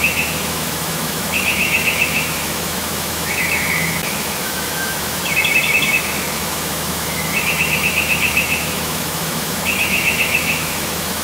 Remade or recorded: remade